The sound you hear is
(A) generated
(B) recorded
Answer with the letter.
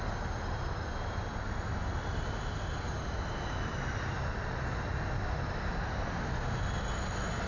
B